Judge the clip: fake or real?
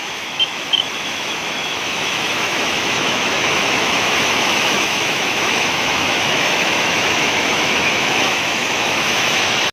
fake